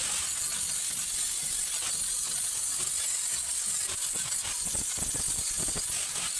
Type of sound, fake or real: real